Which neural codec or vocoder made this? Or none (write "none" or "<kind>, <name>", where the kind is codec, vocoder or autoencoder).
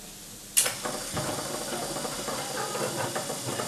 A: none